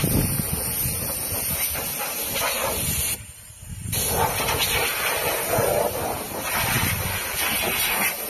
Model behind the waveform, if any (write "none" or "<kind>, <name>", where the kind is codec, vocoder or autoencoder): none